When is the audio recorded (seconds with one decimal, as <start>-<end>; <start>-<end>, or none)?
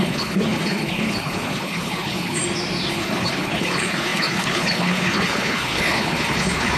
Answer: 2.4-2.9